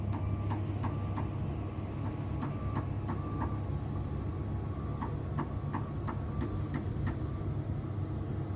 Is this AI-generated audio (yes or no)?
no